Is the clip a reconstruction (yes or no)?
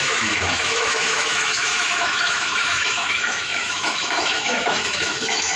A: yes